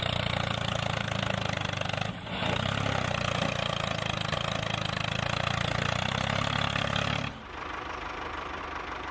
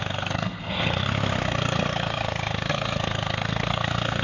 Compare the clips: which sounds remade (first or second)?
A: second